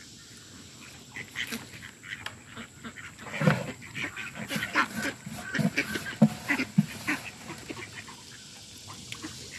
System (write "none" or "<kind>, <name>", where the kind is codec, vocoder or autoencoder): none